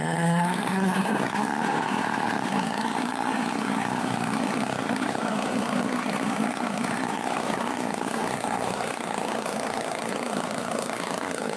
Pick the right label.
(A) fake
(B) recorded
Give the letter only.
A